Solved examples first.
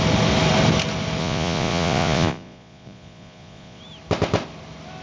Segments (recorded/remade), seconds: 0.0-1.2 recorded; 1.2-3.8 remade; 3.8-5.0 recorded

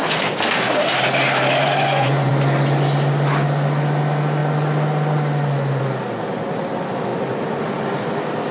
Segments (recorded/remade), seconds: 0.0-1.6 recorded; 1.6-2.3 remade; 2.3-8.5 recorded